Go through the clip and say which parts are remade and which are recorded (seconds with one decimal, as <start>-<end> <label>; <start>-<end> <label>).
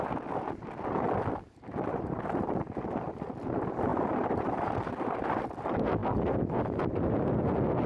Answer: 0.0-1.9 recorded; 1.9-2.5 remade; 2.5-7.9 recorded